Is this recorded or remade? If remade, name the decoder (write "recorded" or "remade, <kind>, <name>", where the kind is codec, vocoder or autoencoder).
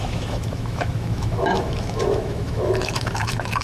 remade, autoencoder, DAC-VAE